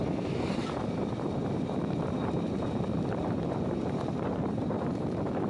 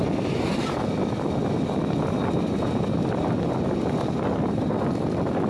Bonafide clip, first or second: second